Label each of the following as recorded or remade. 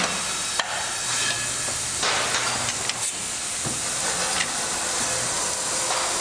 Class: recorded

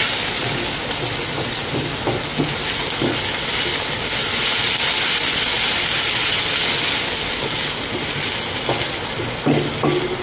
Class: recorded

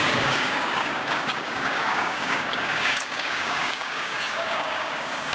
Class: remade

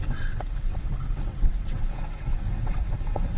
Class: remade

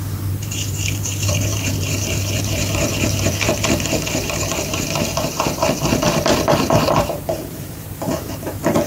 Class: remade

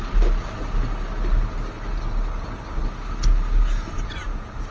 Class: recorded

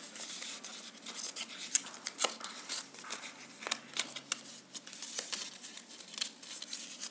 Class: recorded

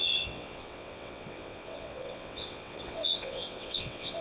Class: remade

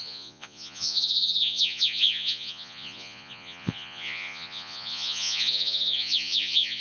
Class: remade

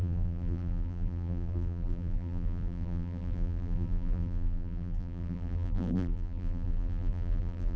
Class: remade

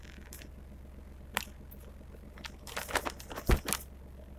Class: recorded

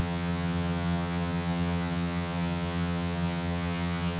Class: remade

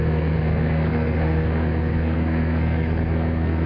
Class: remade